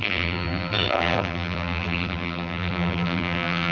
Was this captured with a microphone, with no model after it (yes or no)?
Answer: no